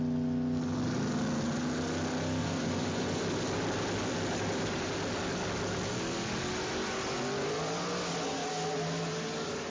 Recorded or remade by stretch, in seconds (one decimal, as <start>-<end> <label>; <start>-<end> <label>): 0.0-2.4 recorded; 2.4-3.2 remade; 3.2-9.7 recorded